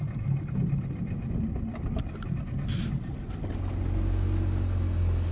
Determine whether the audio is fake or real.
real